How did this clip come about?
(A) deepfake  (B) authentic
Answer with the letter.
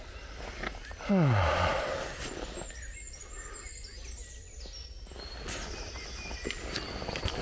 B